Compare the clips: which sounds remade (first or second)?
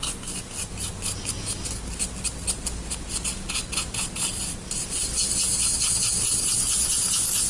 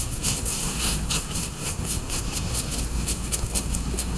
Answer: second